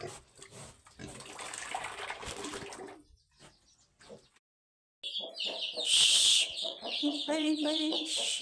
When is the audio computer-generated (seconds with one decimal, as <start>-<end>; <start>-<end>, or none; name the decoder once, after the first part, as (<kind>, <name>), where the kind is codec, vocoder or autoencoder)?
6.4-8.0 (vocoder, WaveNeXt)